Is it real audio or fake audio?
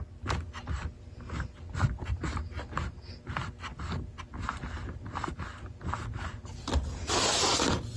real